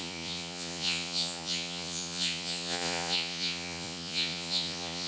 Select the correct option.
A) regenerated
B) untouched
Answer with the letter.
A